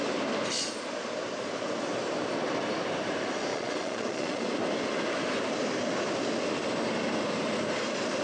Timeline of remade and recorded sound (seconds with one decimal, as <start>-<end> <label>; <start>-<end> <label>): 0.0-3.5 recorded; 3.5-4.4 remade; 4.4-8.2 recorded